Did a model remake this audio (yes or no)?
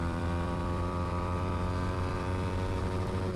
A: yes